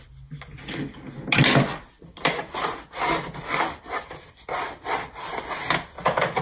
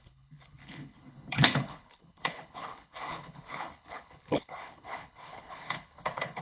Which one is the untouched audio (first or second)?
first